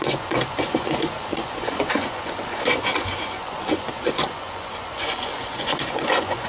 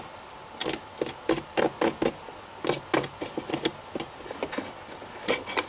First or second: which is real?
second